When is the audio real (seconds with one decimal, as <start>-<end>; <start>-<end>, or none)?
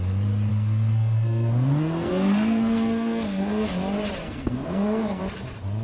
0.0-0.5; 3.7-4.2; 5.2-5.8